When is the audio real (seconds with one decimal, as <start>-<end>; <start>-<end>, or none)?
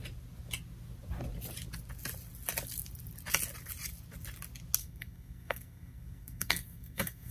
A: 0.0-4.8